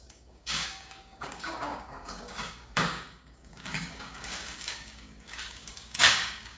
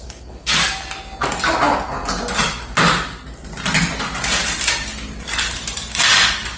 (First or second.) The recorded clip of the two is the second